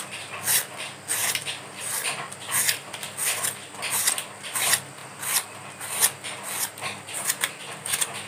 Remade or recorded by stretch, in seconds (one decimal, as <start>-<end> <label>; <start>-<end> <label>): 0.0-1.2 recorded; 1.2-2.9 remade; 2.9-8.3 recorded